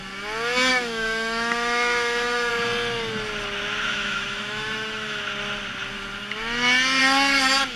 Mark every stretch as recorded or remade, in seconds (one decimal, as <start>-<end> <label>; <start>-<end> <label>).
0.0-0.7 recorded; 0.7-2.5 remade; 2.5-3.9 recorded; 3.9-5.2 remade; 5.2-7.8 recorded